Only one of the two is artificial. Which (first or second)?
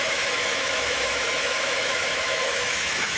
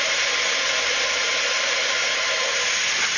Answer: first